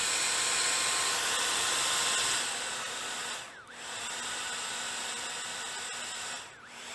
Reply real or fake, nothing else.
real